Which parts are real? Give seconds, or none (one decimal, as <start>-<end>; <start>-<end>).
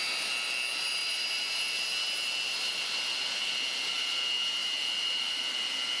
0.0-4.6; 5.4-6.0